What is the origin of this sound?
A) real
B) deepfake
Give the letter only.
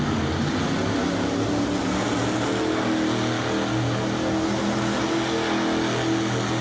A